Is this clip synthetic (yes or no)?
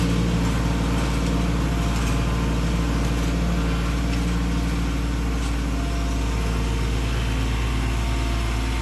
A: no